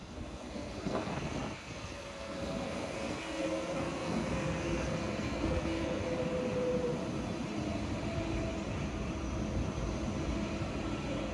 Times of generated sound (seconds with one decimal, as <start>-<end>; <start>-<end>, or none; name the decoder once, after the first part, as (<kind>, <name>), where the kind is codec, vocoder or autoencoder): 0.0-6.0 (codec, SNAC)

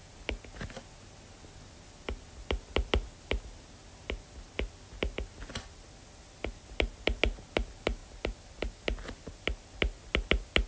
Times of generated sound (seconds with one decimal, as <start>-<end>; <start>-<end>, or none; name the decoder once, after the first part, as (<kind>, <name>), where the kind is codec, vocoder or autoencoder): none

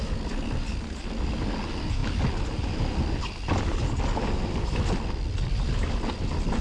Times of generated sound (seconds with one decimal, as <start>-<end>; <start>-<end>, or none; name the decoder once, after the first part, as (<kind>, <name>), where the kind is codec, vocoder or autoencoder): none

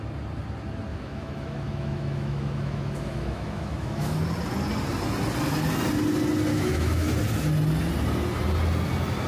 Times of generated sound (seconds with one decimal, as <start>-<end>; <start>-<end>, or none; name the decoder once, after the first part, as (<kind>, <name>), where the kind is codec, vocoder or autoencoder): 0.9-4.2 (autoencoder, DAC-VAE); 6.5-7.1

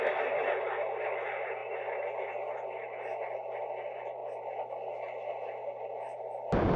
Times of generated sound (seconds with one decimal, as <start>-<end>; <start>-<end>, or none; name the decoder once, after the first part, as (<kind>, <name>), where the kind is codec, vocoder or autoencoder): none

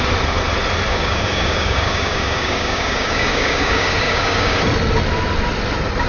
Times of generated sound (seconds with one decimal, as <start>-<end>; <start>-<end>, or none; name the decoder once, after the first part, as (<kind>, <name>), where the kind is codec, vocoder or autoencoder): 0.9-4.6 (codec, DAC)

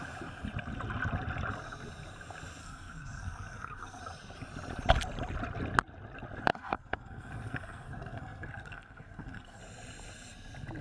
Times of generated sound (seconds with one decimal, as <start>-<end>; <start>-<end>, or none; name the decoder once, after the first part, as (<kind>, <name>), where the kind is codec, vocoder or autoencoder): 2.6-4.0 (codec, SNAC); 6.5-9.6